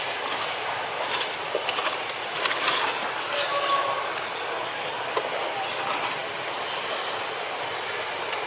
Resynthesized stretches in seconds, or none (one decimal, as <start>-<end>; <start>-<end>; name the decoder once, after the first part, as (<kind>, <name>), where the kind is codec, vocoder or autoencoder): none

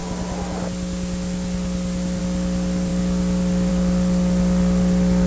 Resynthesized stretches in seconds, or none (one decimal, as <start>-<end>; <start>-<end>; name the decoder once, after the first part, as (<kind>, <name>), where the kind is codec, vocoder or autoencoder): none

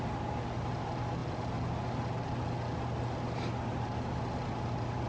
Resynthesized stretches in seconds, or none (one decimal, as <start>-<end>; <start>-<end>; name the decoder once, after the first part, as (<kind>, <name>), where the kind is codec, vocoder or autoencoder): none

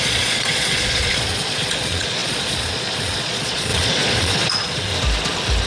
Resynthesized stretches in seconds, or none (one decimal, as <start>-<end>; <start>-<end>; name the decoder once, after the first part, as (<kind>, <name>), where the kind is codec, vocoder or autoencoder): 0.0-4.9 (vocoder, Vocos)